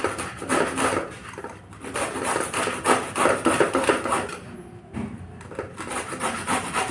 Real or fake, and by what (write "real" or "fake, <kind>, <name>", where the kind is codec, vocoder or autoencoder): real